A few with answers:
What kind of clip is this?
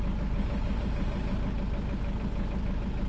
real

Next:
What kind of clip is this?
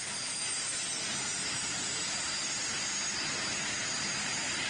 real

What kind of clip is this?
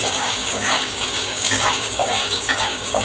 fake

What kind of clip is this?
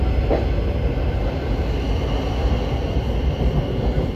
real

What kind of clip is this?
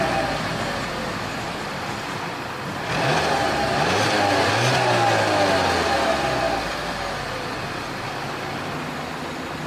real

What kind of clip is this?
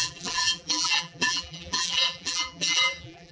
fake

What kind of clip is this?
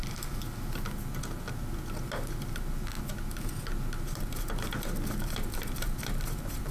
real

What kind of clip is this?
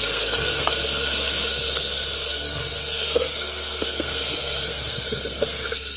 fake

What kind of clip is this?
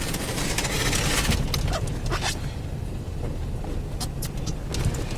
real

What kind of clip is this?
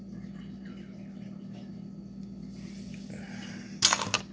real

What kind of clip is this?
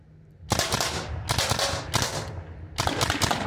real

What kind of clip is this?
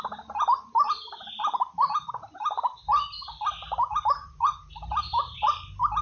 real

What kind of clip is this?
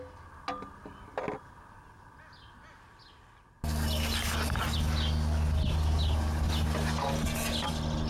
real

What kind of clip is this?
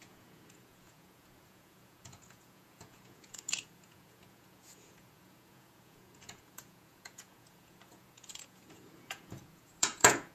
fake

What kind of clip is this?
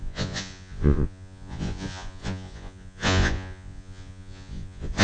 fake